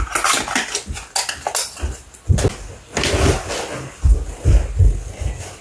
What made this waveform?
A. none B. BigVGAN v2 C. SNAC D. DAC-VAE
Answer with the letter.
A